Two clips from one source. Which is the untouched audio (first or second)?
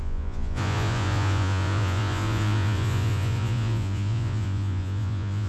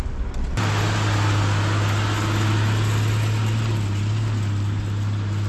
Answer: second